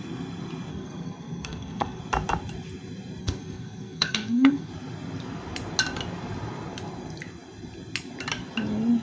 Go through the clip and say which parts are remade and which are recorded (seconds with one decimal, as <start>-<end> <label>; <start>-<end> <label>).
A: 0.0-0.7 recorded; 0.7-2.0 remade; 2.0-3.2 recorded; 3.2-4.7 remade; 4.7-9.0 recorded